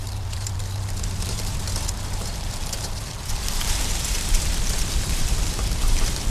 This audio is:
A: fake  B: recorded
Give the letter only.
A